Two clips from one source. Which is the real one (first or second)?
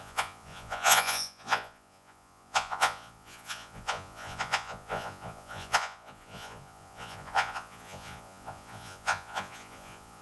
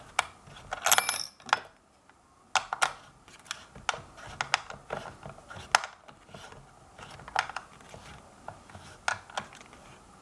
second